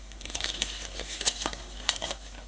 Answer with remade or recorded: remade